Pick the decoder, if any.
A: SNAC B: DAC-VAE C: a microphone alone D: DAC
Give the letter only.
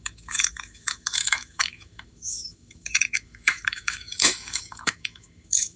B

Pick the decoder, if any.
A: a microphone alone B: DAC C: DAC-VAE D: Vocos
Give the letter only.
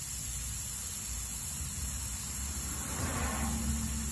A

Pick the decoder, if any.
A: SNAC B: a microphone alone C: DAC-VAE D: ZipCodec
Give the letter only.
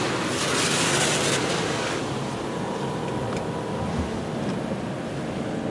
B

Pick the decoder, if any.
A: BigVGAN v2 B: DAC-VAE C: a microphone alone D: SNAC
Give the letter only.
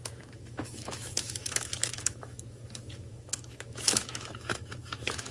B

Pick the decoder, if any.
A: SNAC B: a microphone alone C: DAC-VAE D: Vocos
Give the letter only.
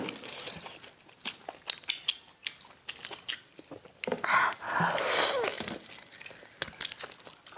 B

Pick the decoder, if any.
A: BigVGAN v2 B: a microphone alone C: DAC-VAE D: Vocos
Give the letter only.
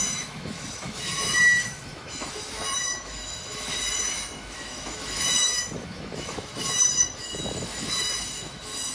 C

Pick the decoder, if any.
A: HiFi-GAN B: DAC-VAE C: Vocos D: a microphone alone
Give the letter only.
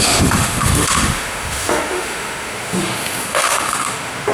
B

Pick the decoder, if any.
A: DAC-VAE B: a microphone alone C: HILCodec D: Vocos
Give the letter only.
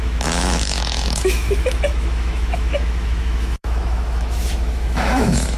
A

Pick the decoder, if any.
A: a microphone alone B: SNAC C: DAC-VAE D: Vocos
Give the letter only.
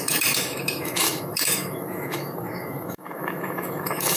C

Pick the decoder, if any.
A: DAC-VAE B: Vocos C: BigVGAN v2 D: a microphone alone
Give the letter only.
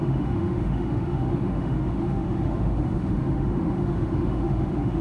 A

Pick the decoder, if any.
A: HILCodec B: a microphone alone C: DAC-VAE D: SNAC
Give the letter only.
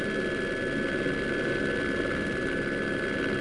B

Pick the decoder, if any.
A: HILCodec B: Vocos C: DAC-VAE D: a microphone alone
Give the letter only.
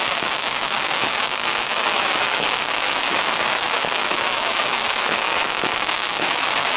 C